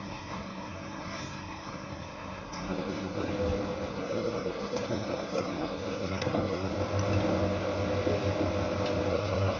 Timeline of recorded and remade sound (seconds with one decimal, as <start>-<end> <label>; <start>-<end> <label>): 0.0-3.3 remade; 3.3-3.9 recorded; 3.9-6.7 remade; 6.7-9.1 recorded; 9.1-9.6 remade